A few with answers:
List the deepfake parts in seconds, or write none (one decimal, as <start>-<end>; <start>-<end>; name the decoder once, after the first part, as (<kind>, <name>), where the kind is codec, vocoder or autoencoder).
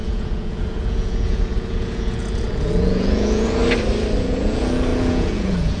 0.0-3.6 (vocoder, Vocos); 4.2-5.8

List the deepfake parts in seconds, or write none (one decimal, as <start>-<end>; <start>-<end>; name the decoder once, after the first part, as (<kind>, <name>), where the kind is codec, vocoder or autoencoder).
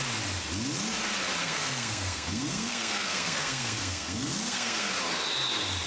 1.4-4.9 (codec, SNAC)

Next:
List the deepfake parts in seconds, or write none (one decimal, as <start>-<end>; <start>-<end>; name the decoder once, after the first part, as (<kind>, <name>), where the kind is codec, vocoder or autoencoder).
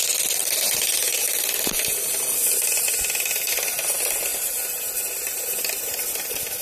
none